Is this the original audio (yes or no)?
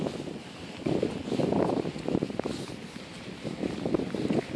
yes